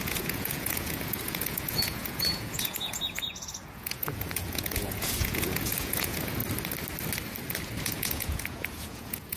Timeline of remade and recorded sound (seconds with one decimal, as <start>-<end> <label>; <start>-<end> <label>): 0.0-6.4 remade; 6.4-7.8 recorded; 7.8-9.4 remade